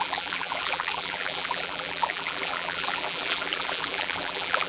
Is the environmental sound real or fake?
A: fake